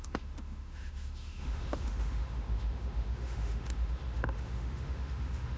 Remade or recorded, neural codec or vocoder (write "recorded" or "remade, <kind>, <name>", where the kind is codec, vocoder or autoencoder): remade, autoencoder, DAC-VAE